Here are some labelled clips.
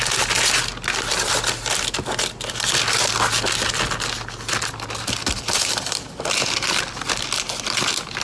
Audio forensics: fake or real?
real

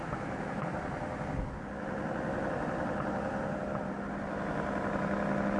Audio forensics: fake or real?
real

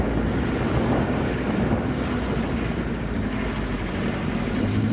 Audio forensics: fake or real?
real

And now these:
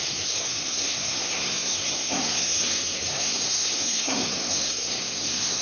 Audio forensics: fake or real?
fake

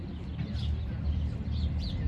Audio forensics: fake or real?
real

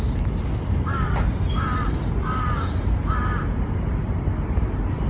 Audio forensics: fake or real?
real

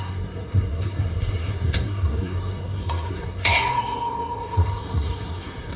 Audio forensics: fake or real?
fake